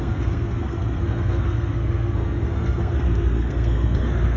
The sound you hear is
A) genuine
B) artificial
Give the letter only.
B